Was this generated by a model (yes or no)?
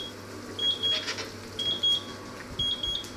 no